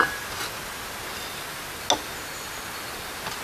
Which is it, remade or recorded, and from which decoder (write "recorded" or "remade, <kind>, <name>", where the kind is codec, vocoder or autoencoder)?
recorded